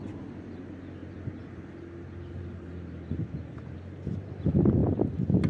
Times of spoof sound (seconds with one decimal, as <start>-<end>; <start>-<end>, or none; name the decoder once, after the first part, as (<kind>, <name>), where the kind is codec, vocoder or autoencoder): none